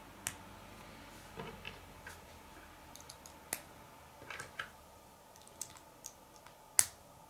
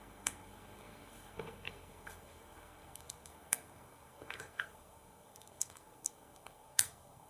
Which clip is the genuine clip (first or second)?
first